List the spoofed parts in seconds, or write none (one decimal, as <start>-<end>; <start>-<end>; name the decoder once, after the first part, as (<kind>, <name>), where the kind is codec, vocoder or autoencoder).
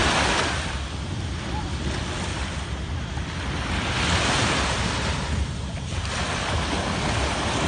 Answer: none